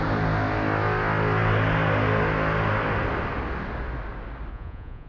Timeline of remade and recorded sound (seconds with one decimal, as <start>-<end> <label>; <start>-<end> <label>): 0.0-4.5 recorded; 4.5-5.1 remade